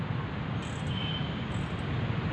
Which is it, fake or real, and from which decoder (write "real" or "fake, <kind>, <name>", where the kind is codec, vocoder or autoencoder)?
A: real